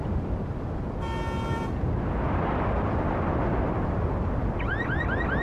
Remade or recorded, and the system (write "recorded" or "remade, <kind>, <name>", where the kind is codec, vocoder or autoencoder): remade, vocoder, BigVGAN v2